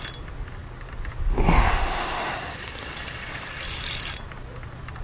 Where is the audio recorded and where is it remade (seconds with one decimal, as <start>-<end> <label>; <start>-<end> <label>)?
0.0-1.3 recorded; 1.3-2.3 remade; 2.3-5.0 recorded